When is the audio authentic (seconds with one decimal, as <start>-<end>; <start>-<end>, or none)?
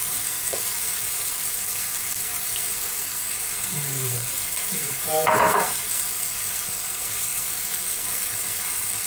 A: none